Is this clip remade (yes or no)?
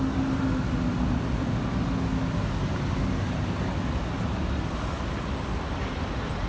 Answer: no